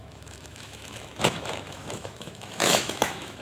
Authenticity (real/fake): fake